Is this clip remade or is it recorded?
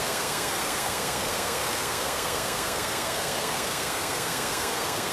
remade